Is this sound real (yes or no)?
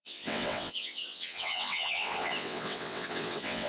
no